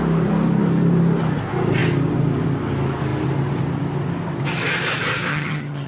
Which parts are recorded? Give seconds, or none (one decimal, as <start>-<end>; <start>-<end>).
0.0-5.3